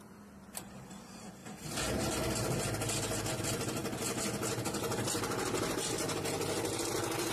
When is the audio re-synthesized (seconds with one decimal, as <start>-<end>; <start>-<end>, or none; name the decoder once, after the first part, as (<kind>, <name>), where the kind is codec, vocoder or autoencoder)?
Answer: none